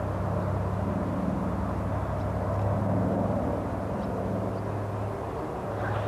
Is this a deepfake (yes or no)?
no